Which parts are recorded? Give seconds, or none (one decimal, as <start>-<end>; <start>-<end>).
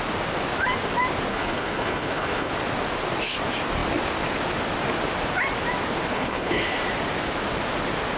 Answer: 0.0-1.3; 2.5-6.1; 6.8-8.2